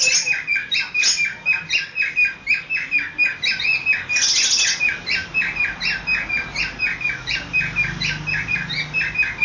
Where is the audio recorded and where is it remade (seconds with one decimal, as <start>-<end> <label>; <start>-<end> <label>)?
0.0-9.4 recorded